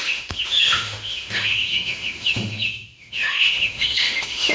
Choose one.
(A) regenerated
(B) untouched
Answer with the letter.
A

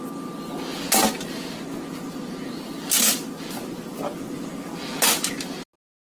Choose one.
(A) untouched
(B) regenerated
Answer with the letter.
A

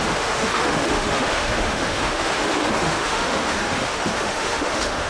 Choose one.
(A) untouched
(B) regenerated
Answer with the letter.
B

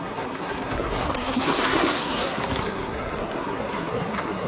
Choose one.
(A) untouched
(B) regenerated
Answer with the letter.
B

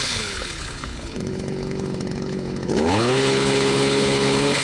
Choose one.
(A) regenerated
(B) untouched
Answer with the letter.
A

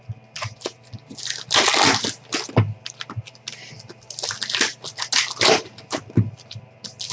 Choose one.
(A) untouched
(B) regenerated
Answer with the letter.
A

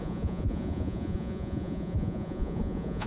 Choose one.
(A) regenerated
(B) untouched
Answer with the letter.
A